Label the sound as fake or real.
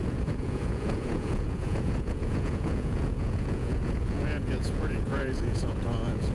fake